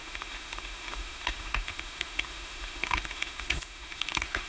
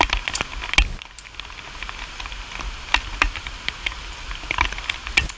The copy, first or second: first